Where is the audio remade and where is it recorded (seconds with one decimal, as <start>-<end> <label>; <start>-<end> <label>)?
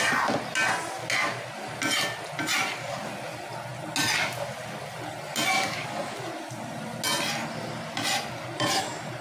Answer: 0.0-9.2 recorded